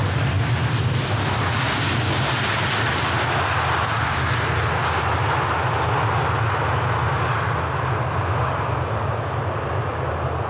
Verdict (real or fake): real